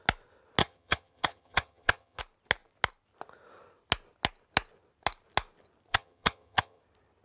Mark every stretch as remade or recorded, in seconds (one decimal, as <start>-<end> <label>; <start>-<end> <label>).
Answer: 0.0-0.6 recorded; 0.6-2.2 remade; 2.2-5.9 recorded; 5.9-6.8 remade; 6.8-7.2 recorded